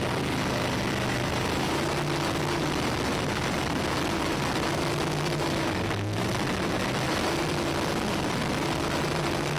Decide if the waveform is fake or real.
real